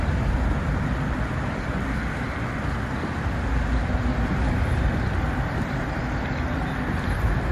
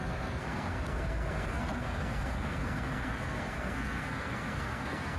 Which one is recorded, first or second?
first